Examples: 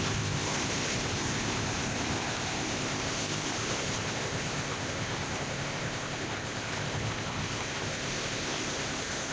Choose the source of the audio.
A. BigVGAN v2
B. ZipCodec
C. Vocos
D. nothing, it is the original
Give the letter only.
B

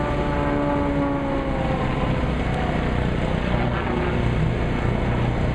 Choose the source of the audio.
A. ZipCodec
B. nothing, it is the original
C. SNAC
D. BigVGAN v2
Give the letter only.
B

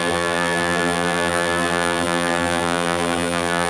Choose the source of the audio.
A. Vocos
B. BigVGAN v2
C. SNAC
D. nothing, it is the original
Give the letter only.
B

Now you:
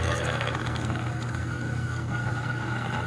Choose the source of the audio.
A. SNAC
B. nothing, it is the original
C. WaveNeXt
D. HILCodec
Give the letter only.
A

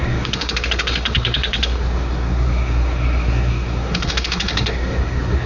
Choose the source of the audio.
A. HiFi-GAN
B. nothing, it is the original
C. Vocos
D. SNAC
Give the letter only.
D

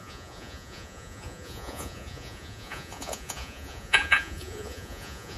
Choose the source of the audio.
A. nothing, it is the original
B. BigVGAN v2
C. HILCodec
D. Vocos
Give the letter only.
D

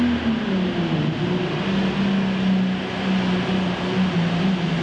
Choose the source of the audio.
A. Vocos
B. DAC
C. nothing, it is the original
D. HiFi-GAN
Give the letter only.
C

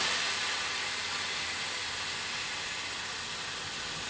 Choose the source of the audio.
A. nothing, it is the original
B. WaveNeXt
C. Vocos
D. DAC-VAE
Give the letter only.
A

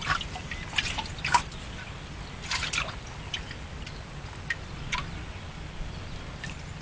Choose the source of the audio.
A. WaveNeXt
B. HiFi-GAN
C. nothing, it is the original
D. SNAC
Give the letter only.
C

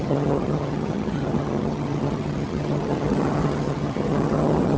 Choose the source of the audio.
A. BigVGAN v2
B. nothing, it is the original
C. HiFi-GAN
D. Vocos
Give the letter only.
C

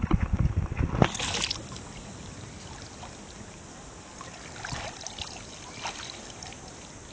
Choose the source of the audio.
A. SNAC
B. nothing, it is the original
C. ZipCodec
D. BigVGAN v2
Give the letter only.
B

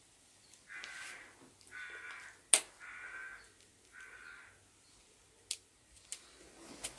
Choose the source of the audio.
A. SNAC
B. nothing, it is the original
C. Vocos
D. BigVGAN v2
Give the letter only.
B